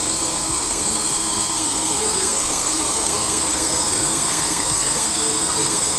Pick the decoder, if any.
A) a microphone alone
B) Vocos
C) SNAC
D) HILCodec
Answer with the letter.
C